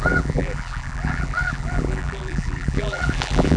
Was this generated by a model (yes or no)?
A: yes